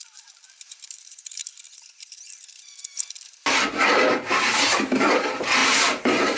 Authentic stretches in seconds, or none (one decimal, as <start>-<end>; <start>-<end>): 1.4-3.7